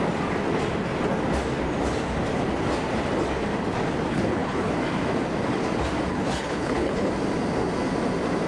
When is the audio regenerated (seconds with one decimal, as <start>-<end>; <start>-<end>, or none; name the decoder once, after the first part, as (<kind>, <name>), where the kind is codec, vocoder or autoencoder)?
4.1-4.7 (codec, HILCodec); 6.1-7.1